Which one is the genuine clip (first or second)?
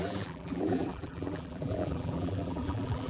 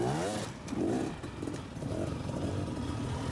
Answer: second